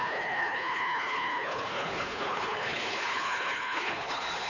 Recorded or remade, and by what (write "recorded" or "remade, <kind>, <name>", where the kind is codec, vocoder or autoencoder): remade, codec, HILCodec